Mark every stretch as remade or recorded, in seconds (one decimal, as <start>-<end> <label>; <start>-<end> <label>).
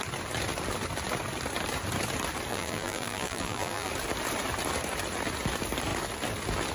0.0-2.5 recorded; 2.5-3.9 remade; 3.9-6.7 recorded